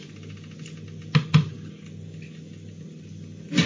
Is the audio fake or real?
real